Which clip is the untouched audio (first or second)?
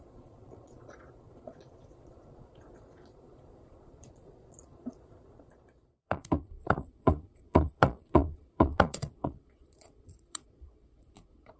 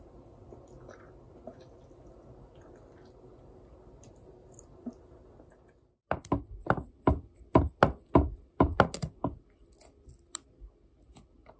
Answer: second